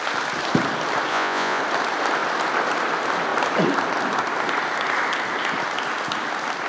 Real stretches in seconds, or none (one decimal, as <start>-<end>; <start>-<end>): 0.0-1.1; 1.6-6.7

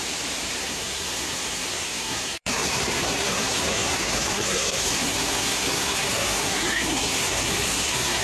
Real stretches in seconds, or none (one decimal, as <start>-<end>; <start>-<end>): 0.0-0.6

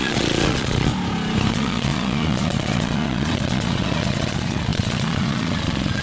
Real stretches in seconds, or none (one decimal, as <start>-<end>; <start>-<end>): 0.9-1.5

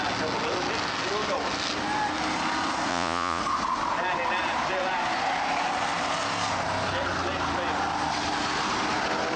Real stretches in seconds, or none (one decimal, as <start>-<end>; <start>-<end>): 0.0-2.9; 3.4-9.4